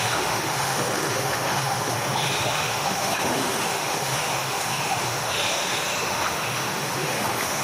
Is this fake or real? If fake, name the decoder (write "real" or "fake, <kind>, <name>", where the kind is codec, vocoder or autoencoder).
fake, autoencoder, DAC-VAE